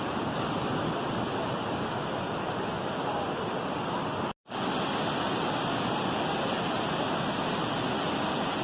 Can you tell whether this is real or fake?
real